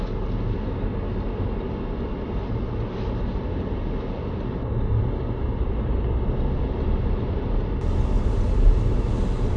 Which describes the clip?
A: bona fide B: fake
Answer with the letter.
A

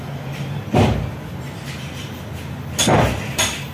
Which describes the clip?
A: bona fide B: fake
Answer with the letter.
A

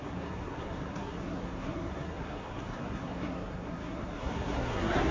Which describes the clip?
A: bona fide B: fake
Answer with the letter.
B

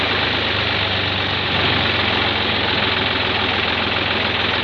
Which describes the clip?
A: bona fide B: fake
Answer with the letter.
A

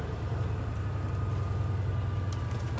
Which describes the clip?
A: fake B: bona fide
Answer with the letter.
B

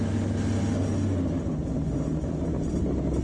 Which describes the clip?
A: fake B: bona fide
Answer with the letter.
B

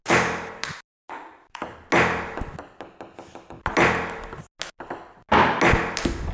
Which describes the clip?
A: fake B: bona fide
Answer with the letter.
B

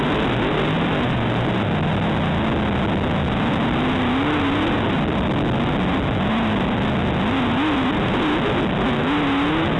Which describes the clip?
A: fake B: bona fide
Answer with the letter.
B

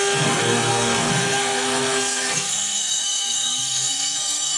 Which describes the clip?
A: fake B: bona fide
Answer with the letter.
A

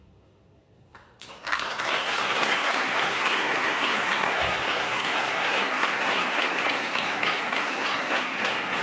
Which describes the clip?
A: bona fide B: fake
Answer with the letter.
B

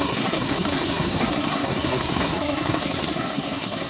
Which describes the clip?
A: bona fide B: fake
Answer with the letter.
B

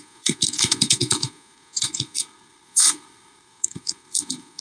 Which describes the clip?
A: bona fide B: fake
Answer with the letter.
B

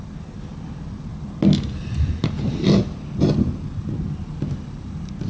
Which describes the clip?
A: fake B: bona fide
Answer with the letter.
B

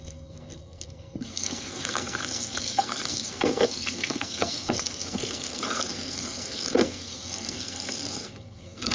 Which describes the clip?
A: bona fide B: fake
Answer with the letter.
B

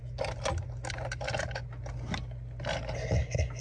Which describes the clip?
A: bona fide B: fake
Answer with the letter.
A